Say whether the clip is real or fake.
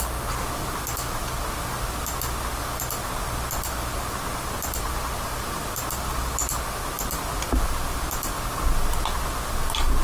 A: real